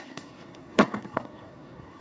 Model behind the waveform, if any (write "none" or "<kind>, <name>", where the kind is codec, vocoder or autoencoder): codec, SNAC